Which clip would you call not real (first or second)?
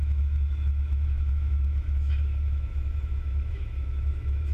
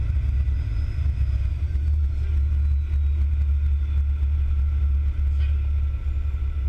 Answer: first